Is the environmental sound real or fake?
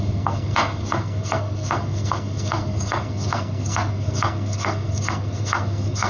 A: fake